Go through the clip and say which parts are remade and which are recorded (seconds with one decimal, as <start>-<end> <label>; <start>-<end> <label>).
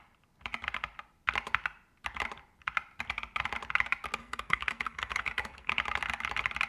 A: 0.0-4.2 recorded; 4.2-5.7 remade; 5.7-6.7 recorded